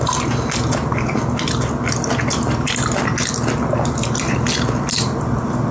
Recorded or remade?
recorded